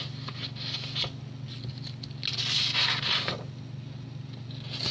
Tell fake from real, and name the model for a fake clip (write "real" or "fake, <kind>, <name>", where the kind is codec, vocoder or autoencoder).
real